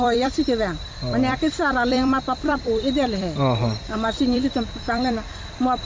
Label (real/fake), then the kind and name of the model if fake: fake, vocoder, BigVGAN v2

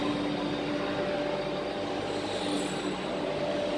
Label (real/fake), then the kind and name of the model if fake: real